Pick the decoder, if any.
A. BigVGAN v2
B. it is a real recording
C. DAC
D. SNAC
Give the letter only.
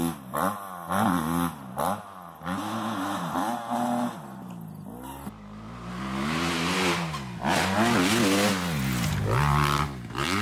B